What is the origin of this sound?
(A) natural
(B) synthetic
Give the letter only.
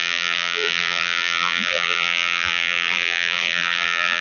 B